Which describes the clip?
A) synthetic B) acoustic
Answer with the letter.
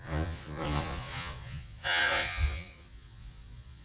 A